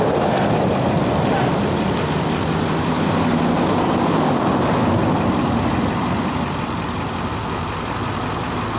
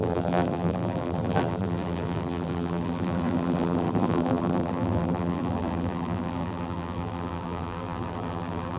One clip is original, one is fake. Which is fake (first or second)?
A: second